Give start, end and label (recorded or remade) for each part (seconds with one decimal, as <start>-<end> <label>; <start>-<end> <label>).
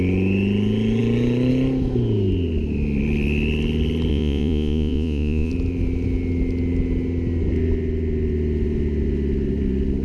0.0-4.1 recorded; 4.1-5.5 remade; 5.5-10.0 recorded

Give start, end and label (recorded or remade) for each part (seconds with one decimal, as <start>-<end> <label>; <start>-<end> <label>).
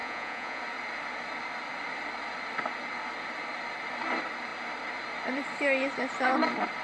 0.0-0.6 remade; 0.6-6.8 recorded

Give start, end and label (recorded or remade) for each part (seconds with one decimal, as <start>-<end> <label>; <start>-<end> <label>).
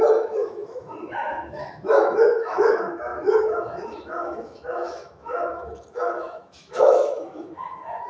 0.0-8.1 remade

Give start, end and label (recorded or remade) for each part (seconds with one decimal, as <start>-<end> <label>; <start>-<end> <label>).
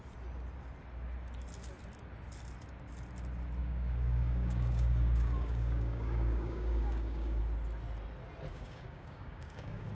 0.0-3.6 recorded; 3.6-7.4 remade; 7.4-8.5 recorded; 8.5-9.9 remade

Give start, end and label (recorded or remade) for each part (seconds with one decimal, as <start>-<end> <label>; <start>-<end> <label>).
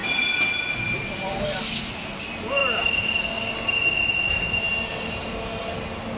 0.0-6.2 recorded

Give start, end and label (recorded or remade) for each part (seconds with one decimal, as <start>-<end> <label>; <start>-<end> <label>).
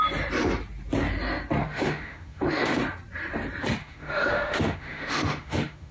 0.0-1.6 recorded; 1.6-2.8 remade; 2.8-3.8 recorded; 3.8-5.9 remade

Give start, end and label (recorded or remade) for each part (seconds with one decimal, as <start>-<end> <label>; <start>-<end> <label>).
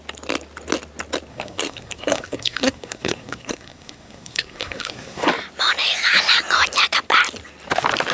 0.0-1.3 recorded; 1.3-5.3 remade; 5.3-8.1 recorded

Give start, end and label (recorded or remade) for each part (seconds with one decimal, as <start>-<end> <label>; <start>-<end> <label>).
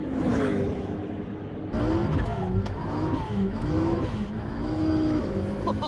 0.0-1.0 remade; 1.0-2.4 recorded; 2.4-5.9 remade